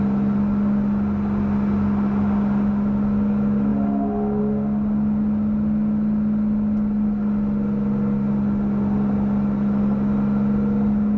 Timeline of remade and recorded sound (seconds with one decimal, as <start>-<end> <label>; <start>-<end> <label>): 0.0-11.2 recorded